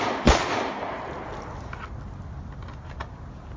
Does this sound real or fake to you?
real